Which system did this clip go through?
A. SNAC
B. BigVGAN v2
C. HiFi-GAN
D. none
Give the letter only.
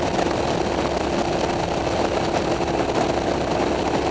D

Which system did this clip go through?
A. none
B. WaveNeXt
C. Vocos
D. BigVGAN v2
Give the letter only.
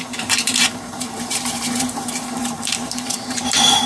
D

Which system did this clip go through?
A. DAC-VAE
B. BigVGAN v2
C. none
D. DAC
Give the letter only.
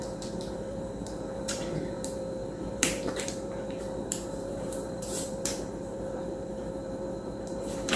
B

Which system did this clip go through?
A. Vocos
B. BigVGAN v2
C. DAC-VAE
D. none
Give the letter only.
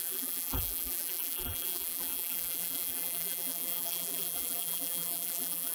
B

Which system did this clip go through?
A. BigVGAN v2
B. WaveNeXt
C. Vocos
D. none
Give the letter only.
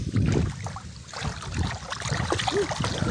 D